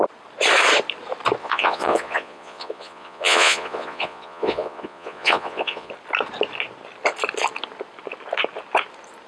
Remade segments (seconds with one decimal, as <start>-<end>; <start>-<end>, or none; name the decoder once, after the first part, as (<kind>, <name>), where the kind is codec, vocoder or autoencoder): 1.4-5.9 (vocoder, Vocos)